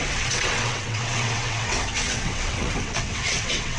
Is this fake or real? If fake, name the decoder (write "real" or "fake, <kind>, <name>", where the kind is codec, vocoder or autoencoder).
fake, vocoder, WaveNeXt